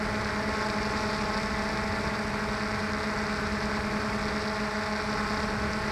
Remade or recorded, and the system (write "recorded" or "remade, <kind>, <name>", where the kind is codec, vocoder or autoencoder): recorded